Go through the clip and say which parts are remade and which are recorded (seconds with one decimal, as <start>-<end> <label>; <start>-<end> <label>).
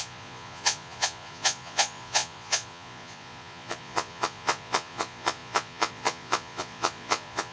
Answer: 0.0-7.5 remade